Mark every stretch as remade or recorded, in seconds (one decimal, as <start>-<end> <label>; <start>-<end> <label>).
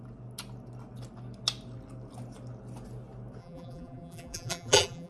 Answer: 0.0-3.4 recorded; 3.4-5.1 remade